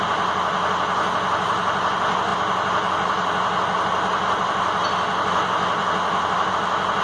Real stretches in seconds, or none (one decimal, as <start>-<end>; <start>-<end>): 0.0-7.0